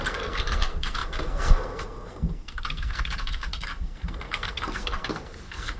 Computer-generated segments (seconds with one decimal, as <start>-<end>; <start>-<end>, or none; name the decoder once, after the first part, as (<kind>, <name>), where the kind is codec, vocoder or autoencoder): 0.0-5.8 (codec, SNAC)